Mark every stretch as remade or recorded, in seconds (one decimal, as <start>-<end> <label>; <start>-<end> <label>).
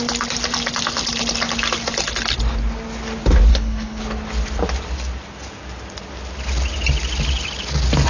0.0-3.5 recorded; 3.5-4.0 remade; 4.0-8.1 recorded